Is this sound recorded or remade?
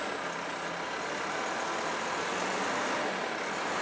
recorded